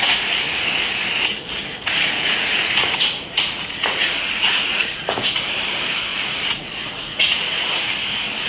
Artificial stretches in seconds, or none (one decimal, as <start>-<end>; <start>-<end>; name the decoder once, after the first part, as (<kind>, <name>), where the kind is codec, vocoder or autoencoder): 1.7-5.3 (vocoder, Vocos); 6.1-7.8